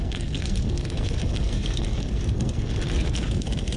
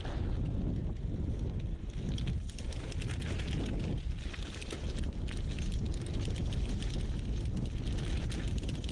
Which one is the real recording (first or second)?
second